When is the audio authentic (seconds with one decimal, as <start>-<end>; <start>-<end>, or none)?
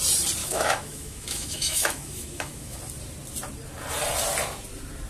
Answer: 0.0-0.4; 2.8-5.1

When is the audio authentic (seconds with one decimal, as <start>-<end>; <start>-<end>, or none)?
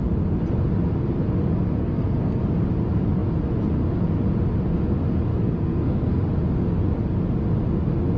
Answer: 0.0-1.8; 2.4-5.3; 6.2-8.2